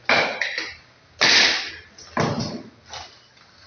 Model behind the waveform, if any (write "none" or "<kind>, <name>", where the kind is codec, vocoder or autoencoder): none